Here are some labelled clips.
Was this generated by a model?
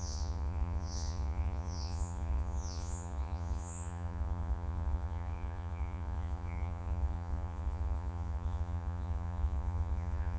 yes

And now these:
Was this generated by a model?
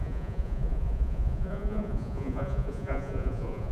yes